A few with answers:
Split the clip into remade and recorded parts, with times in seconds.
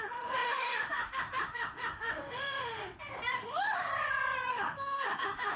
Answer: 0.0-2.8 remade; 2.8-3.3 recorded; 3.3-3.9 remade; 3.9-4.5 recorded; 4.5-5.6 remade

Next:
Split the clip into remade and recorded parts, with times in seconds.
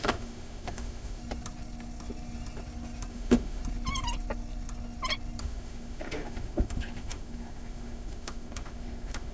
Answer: 0.0-1.2 remade; 1.2-3.1 recorded; 3.1-3.6 remade; 3.6-5.4 recorded; 5.4-9.3 remade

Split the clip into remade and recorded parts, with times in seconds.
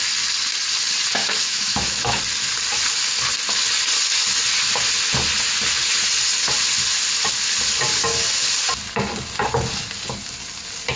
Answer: 0.0-1.2 recorded; 1.2-2.2 remade; 2.2-11.0 recorded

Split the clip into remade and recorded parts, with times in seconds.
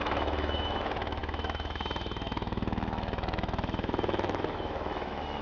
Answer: 0.0-5.4 remade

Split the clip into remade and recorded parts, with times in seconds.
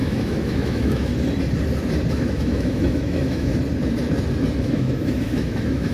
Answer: 0.0-1.1 remade; 1.1-2.1 recorded; 2.1-3.5 remade; 3.5-4.6 recorded; 4.6-5.9 remade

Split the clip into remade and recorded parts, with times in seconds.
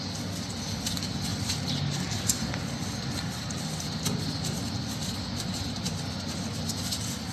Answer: 0.0-7.3 recorded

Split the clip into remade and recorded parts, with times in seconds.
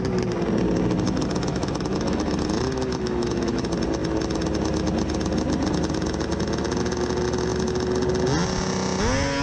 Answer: 0.0-1.5 recorded; 1.5-3.6 remade; 3.6-9.4 recorded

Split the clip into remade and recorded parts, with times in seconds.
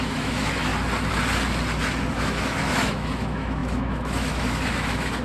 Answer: 0.0-0.7 remade; 0.7-2.1 recorded; 2.1-5.2 remade